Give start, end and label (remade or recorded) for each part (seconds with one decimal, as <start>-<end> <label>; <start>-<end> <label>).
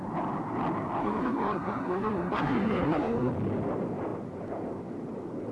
0.0-1.0 recorded; 1.0-3.3 remade; 3.3-5.5 recorded